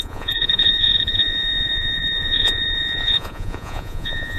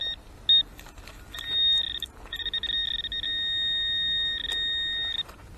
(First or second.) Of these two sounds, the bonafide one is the second